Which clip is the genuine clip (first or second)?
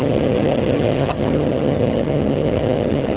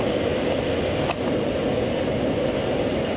second